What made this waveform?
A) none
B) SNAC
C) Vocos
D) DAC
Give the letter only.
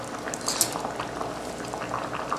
A